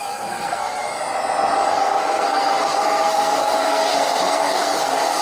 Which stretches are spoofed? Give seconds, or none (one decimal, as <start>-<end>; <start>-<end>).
0.0-0.9; 1.7-5.2